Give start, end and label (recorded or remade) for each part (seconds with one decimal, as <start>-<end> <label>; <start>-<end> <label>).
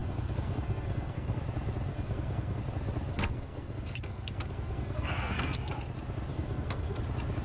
0.0-1.4 remade; 1.4-1.9 recorded; 1.9-2.6 remade; 2.6-3.1 recorded; 3.1-5.7 remade; 5.7-6.3 recorded; 6.3-7.0 remade; 7.0-7.4 recorded